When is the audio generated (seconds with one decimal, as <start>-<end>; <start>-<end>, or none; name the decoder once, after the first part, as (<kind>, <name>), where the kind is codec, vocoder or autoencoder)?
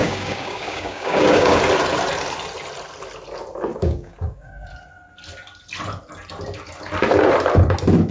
0.0-1.6 (codec, DAC); 3.7-4.7